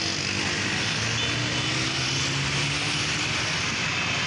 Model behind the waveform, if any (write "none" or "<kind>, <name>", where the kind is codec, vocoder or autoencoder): none